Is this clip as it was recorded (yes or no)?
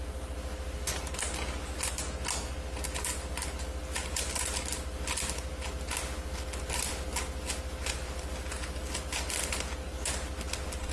yes